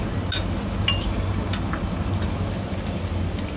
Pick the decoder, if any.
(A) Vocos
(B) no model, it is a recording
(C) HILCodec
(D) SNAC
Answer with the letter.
B